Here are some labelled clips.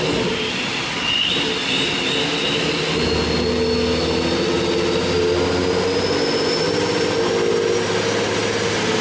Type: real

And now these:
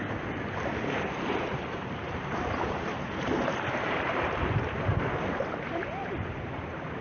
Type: fake